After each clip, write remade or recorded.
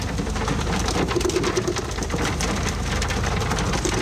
recorded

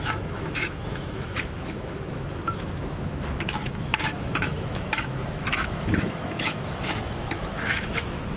remade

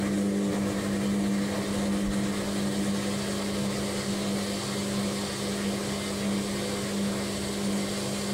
recorded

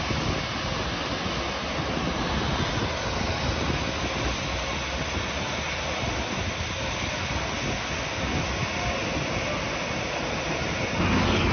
recorded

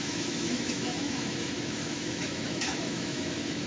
remade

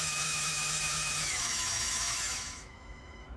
remade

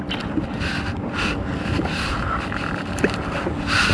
recorded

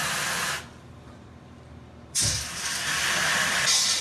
recorded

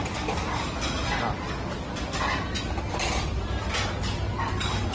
recorded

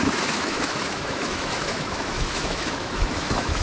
remade